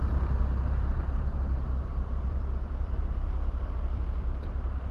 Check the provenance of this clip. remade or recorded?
remade